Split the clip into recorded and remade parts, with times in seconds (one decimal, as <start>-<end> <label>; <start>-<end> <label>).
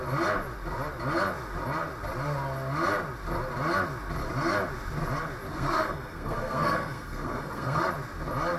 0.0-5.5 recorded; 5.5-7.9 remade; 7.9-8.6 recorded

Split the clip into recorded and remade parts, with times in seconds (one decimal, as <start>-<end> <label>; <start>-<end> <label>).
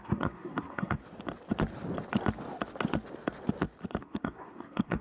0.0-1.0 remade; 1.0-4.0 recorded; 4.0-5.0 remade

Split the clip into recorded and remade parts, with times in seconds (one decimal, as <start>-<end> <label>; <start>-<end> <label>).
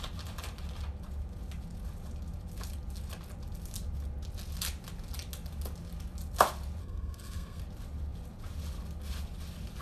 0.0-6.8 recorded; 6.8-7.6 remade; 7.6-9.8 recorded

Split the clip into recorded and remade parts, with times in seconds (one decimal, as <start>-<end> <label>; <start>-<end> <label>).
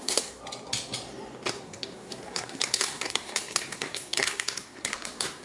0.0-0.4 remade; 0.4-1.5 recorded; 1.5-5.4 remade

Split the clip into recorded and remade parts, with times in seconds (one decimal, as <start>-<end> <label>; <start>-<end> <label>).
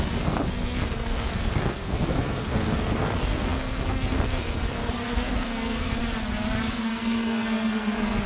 0.0-6.0 remade; 6.0-6.6 recorded; 6.6-8.3 remade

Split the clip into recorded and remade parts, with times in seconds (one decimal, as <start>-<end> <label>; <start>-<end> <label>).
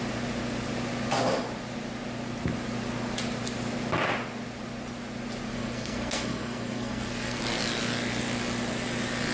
0.0-5.5 recorded; 5.5-7.4 remade; 7.4-9.3 recorded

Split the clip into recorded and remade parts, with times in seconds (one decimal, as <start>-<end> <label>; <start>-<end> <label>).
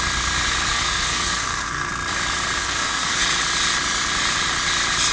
0.0-0.7 recorded; 0.7-1.9 remade; 1.9-2.6 recorded; 2.6-3.2 remade; 3.2-5.1 recorded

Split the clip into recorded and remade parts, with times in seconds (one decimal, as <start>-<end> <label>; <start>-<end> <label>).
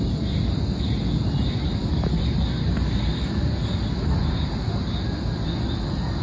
0.0-6.2 recorded